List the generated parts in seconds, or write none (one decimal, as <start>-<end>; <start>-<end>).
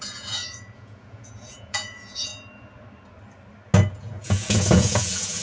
0.0-2.3; 3.9-5.4